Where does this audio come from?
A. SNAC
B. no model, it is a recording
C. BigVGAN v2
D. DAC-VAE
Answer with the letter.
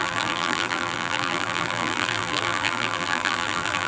C